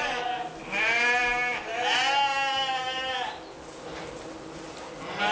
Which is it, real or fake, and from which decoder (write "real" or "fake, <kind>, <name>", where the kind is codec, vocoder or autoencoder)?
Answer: real